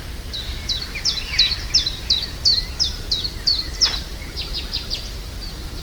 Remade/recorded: remade